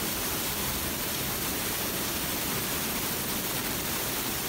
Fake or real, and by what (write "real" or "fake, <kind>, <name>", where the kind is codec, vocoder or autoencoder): real